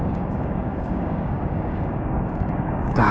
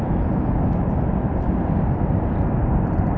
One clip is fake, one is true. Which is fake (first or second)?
first